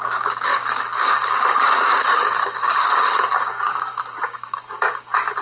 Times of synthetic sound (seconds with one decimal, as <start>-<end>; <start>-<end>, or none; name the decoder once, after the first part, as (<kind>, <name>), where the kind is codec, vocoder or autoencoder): 0.0-5.4 (codec, DAC)